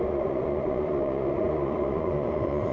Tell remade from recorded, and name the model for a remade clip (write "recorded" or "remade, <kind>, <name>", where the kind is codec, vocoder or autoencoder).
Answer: remade, vocoder, Vocos